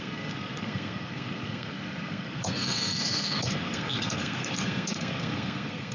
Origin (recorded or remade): remade